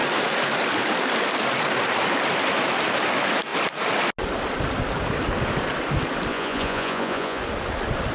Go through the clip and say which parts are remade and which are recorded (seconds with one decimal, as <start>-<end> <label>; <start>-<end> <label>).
0.0-6.3 recorded; 6.3-7.4 remade; 7.4-8.1 recorded